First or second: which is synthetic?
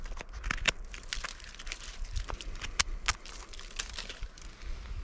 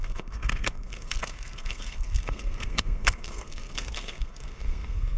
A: second